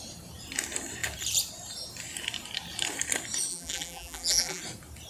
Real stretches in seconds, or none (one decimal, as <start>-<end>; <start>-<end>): 0.0-3.5; 4.6-5.1